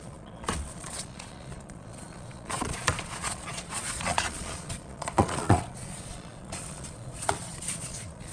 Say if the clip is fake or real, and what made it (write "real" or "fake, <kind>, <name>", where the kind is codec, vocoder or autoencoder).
fake, vocoder, Vocos